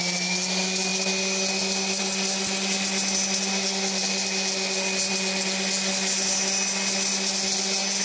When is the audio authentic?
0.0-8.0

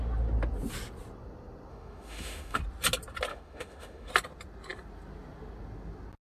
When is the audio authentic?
0.0-1.7; 2.6-3.3; 4.1-6.3

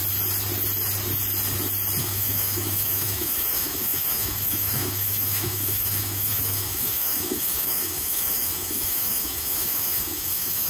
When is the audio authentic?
0.0-2.0

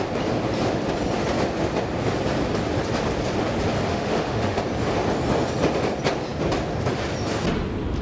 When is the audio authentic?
0.0-3.9; 4.6-8.0

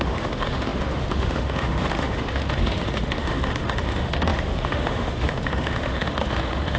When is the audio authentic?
none

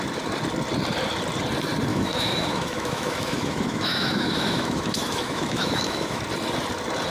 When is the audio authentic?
0.0-1.9; 6.2-7.1